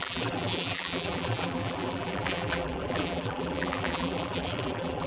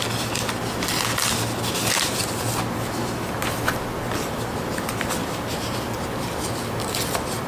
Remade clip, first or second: first